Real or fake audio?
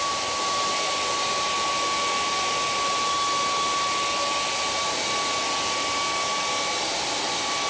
real